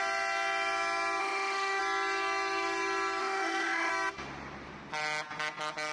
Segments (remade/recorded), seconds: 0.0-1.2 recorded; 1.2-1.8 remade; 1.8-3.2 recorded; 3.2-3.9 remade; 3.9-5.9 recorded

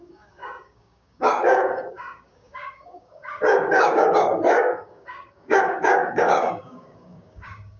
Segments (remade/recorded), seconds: 0.0-7.8 remade

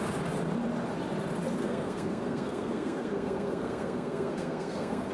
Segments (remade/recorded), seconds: 0.0-1.6 recorded; 1.6-5.1 remade